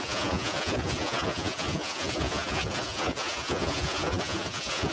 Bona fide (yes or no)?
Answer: no